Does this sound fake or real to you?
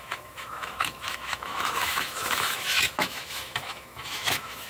fake